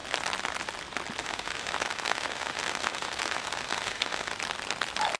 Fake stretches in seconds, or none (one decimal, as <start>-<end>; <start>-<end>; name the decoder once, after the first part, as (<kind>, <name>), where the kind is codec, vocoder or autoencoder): 1.2-4.3 (autoencoder, DAC-VAE)